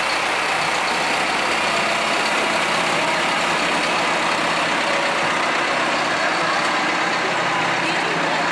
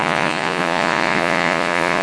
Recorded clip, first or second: first